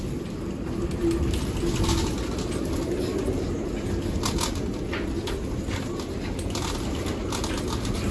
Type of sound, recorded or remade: recorded